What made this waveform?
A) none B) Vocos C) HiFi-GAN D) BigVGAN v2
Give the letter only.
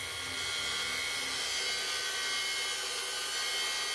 A